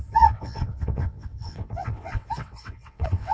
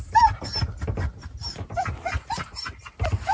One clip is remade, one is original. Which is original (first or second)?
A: second